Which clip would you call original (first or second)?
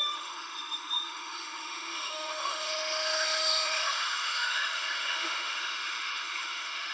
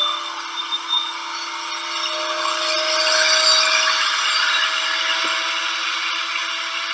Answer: second